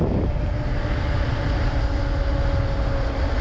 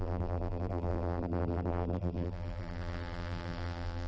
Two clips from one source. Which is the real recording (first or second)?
first